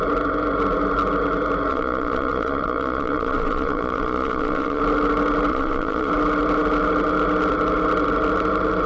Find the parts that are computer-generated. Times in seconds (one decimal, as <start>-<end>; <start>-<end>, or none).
1.7-4.8; 5.5-6.1